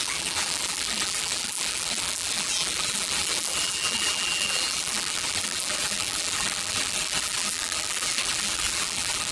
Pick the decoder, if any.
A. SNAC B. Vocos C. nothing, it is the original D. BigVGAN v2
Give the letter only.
D